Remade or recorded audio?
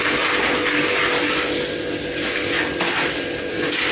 recorded